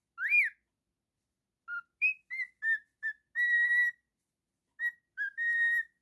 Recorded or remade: recorded